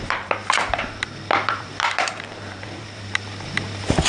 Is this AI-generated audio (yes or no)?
yes